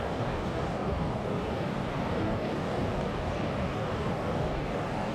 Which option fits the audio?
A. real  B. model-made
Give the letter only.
B